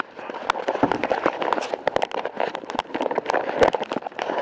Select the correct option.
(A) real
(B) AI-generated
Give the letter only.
B